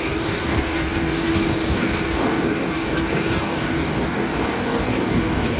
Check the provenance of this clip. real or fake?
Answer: fake